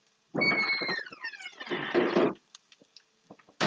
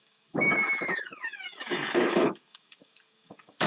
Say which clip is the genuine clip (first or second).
first